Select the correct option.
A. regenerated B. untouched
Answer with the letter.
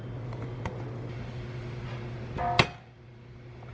B